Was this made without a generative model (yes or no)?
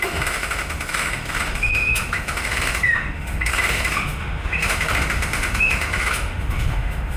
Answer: no